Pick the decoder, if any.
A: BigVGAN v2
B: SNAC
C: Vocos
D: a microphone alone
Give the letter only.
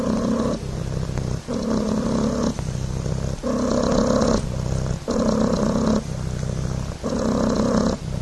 D